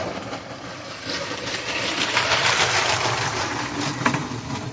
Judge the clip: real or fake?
fake